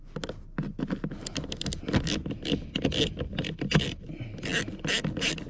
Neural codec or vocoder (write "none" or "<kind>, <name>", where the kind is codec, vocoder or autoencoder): none